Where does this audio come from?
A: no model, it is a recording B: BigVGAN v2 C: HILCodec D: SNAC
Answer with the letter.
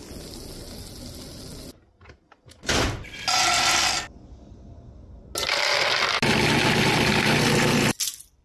A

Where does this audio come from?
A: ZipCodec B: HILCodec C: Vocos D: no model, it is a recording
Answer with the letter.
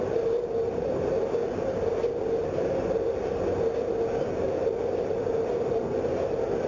D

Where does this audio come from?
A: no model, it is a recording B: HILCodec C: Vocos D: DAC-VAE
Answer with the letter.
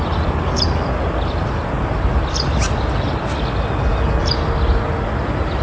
A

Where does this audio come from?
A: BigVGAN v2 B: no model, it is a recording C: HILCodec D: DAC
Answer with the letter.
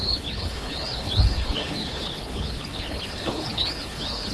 C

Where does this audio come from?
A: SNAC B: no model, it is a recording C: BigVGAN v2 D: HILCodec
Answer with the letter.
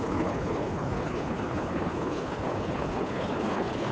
D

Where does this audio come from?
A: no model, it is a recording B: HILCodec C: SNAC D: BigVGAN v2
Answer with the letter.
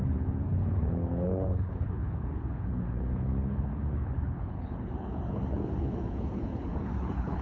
B